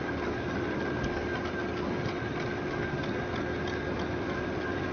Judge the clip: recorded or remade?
recorded